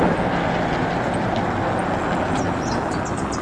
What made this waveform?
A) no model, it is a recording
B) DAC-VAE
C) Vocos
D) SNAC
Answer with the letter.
A